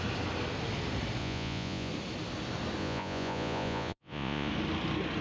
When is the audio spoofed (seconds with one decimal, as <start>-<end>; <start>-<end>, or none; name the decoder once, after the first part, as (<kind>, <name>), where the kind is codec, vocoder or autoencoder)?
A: 1.2-1.9 (vocoder, Vocos); 2.8-4.5